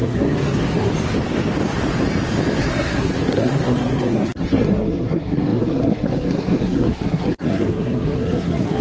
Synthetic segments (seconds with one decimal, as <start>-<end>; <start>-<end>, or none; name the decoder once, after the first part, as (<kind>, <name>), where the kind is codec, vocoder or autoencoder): 0.0-0.9 (codec, SNAC); 2.6-8.8